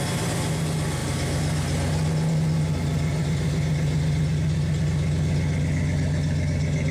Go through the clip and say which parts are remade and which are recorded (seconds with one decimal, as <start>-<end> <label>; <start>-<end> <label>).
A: 0.0-6.9 recorded